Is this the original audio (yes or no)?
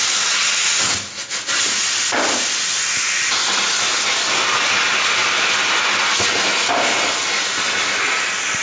yes